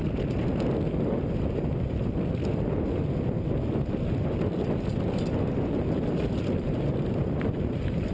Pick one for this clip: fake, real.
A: real